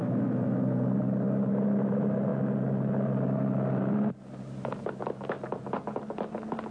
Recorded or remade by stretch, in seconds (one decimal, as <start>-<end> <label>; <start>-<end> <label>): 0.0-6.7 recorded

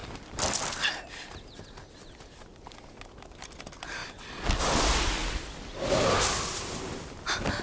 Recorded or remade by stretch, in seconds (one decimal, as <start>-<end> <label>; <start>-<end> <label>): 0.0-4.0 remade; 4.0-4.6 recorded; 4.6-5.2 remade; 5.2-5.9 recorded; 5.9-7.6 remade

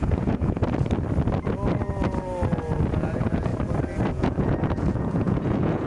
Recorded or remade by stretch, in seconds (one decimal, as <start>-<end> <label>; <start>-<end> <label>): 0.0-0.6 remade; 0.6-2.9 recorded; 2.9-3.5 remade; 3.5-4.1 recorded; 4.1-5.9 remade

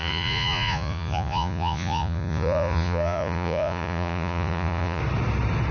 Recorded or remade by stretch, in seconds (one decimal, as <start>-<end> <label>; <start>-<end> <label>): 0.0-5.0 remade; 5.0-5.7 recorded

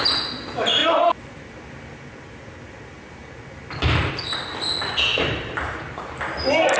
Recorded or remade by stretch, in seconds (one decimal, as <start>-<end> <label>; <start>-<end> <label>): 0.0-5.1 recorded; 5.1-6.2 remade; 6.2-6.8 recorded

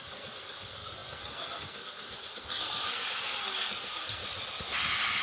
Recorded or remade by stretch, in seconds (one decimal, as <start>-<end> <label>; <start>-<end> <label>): 0.0-4.2 remade; 4.2-5.2 recorded

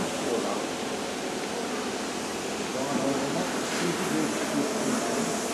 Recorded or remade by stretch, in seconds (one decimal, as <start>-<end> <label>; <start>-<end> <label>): 0.0-5.5 recorded